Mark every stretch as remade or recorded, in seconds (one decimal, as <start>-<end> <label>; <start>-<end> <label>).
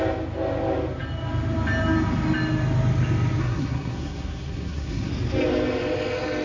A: 0.0-3.4 recorded; 3.4-5.1 remade; 5.1-6.4 recorded